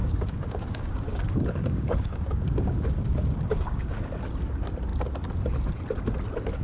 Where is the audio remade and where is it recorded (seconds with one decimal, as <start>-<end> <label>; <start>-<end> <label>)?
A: 0.0-4.0 remade; 4.0-6.6 recorded